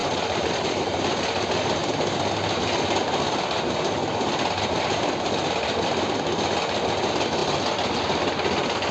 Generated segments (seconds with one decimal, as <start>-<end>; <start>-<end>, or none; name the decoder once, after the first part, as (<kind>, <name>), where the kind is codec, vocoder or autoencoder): 0.0-1.0 (vocoder, BigVGAN v2)